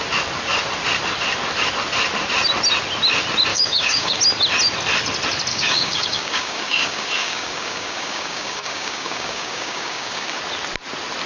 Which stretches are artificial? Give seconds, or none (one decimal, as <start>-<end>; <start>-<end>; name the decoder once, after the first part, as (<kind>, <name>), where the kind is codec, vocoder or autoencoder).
3.5-4.2 (codec, DAC); 5.5-10.4